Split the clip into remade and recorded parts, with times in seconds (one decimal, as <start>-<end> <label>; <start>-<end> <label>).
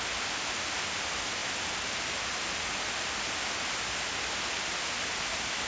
0.0-5.7 recorded